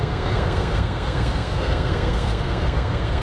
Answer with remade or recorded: remade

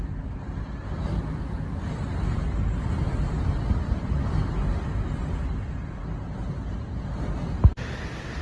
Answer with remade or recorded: recorded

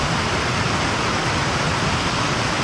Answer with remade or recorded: recorded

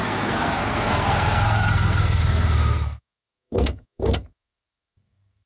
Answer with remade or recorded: remade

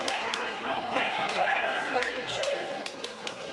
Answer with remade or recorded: remade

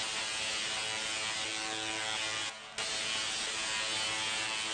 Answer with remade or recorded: recorded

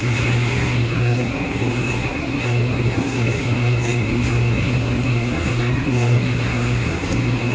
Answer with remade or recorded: remade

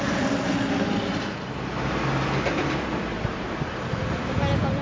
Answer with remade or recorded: recorded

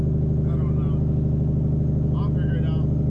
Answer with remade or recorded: recorded